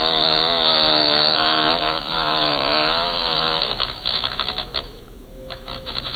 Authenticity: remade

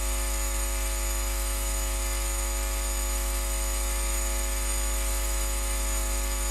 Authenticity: remade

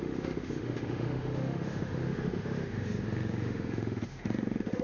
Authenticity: remade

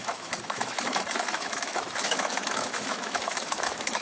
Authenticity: remade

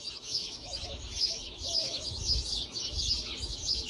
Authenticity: remade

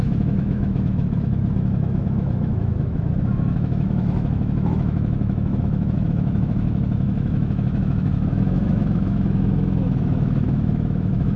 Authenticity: remade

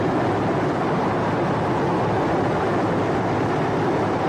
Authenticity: recorded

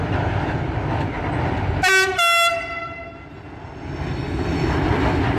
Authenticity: recorded